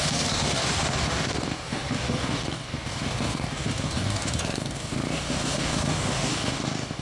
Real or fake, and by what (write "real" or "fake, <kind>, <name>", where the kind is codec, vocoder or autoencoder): fake, codec, DAC